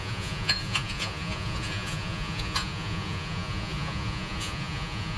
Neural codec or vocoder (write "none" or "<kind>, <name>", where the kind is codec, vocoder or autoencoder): vocoder, Vocos